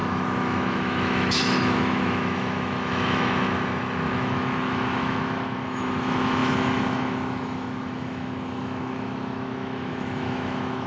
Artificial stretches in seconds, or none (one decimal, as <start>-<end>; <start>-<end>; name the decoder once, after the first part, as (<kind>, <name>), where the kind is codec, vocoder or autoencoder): 0.0-10.9 (autoencoder, DAC-VAE)